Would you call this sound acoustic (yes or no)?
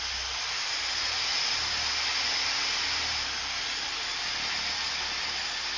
yes